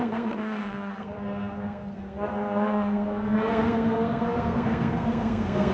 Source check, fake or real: fake